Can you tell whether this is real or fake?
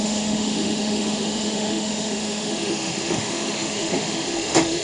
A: fake